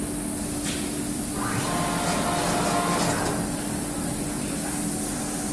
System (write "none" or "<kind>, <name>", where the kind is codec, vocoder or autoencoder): none